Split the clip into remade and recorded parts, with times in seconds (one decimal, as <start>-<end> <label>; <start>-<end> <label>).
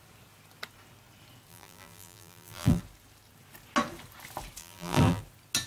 0.0-1.5 recorded; 1.5-2.8 remade; 2.8-4.6 recorded; 4.6-5.2 remade; 5.2-5.7 recorded